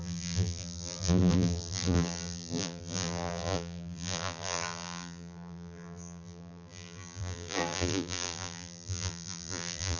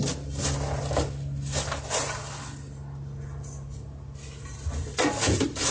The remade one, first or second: first